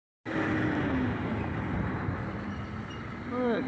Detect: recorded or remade recorded